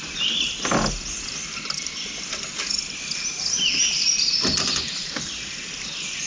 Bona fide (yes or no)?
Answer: no